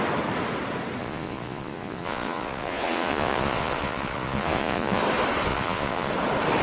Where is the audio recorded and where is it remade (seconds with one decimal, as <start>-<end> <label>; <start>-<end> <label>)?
0.0-1.0 recorded; 1.0-5.0 remade; 5.0-5.5 recorded; 5.5-6.1 remade; 6.1-6.6 recorded